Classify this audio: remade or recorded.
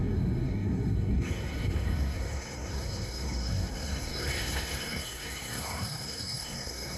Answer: remade